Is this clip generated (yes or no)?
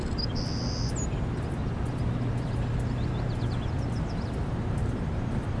no